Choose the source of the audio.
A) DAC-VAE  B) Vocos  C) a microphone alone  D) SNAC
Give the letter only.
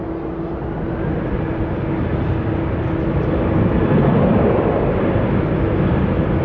C